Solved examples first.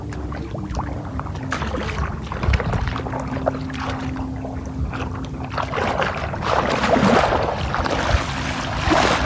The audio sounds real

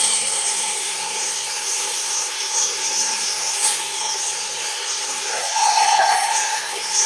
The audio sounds fake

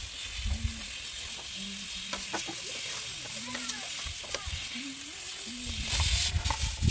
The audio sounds real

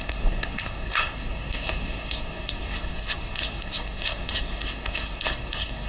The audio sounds fake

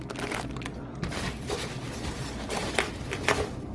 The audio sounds real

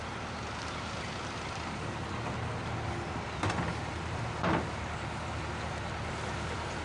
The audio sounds real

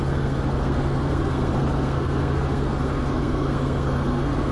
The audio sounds fake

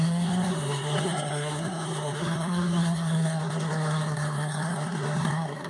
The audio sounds fake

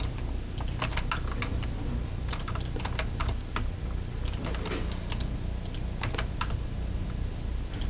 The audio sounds real